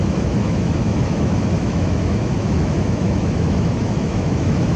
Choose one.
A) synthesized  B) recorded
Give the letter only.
A